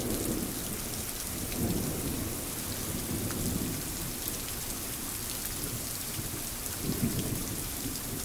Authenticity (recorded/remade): remade